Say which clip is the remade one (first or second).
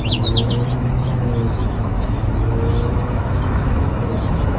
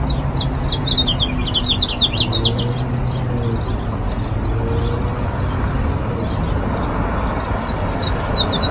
first